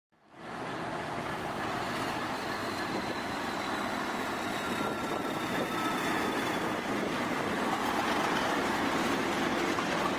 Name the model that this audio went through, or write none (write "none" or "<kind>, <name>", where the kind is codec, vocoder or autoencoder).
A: vocoder, BigVGAN v2